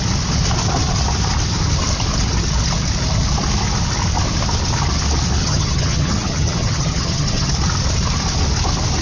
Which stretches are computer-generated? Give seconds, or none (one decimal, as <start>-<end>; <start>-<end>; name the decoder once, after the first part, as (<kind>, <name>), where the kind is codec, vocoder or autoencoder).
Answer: 5.4-7.5 (vocoder, HiFi-GAN)